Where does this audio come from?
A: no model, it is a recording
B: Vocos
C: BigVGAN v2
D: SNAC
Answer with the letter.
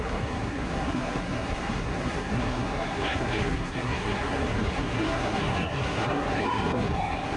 D